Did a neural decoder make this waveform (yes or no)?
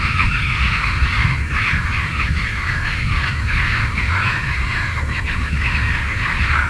yes